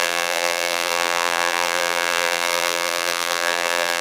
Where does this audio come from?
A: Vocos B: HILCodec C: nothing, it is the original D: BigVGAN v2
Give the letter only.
D